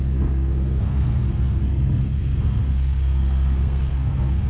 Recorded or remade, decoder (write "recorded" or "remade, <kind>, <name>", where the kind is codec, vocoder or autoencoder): remade, codec, SNAC